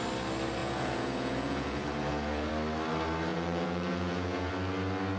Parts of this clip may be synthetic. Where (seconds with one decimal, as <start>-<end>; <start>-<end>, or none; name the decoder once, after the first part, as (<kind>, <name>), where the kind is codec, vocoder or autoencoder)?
0.6-2.5 (vocoder, Vocos); 3.3-4.5